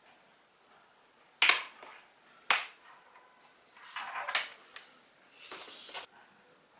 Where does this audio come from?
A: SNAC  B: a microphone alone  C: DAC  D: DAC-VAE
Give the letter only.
B